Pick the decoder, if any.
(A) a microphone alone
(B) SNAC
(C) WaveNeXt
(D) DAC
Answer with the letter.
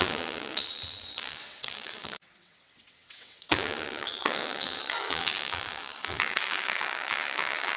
C